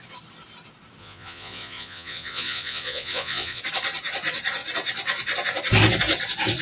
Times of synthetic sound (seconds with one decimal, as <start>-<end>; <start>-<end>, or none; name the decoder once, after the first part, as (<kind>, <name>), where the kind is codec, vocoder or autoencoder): 1.0-3.6 (vocoder, Vocos)